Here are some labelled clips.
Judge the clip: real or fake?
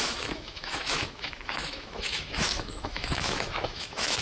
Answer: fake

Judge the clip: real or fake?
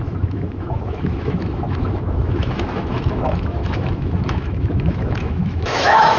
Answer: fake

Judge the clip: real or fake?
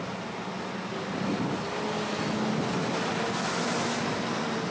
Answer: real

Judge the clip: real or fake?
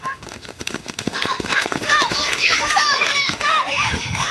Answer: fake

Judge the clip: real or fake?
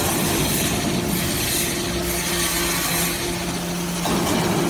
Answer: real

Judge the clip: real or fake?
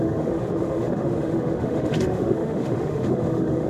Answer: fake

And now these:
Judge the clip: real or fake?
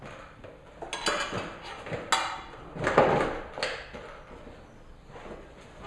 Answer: real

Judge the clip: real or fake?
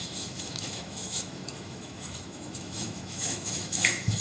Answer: fake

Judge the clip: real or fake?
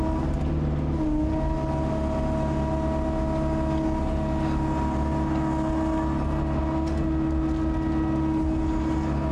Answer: real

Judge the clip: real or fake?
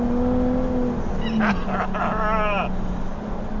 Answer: real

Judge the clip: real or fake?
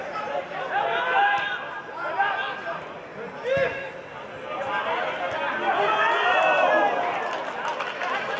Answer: real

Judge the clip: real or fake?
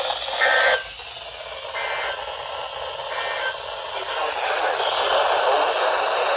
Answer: real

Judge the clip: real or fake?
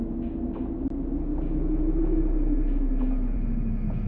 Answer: real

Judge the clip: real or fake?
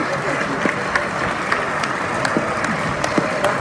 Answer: real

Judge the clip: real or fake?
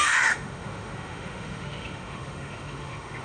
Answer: fake